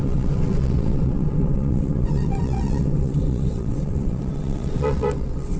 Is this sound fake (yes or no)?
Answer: yes